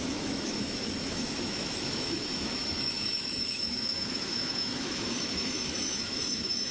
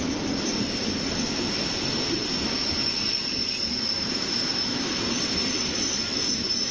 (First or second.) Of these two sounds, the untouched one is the second